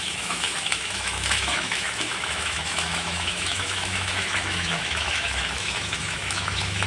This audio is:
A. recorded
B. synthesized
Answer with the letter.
B